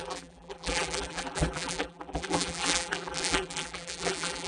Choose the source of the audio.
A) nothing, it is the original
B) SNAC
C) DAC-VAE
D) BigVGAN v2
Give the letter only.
D